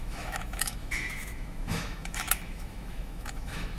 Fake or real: fake